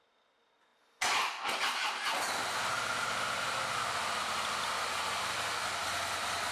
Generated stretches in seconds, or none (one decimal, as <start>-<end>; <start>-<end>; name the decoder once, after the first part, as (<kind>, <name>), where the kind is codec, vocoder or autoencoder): none